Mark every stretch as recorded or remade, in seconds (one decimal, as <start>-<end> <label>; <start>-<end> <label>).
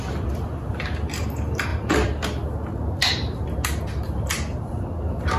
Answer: 0.0-5.4 recorded